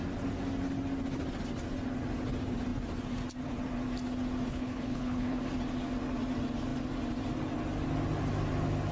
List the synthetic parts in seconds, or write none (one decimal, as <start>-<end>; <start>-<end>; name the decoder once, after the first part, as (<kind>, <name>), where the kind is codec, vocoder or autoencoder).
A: 4.5-5.4 (codec, HILCodec)